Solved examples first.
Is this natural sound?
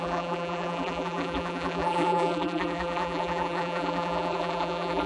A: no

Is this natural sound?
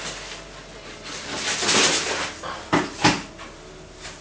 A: yes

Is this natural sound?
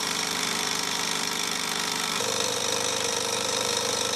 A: no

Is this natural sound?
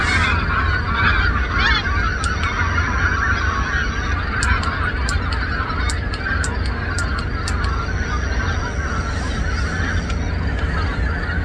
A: yes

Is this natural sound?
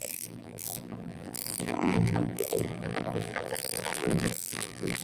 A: no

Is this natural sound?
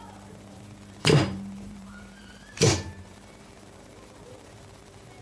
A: no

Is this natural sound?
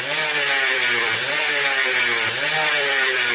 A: no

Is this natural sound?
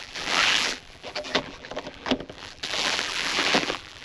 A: no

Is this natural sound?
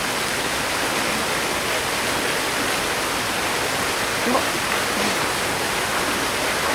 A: yes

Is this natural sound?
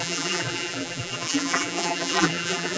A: no